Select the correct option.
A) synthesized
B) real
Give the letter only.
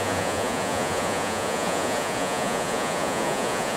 A